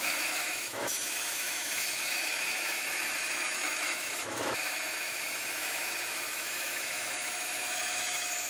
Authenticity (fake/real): fake